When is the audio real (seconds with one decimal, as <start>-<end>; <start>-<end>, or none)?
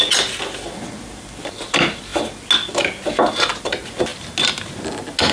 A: 0.0-5.3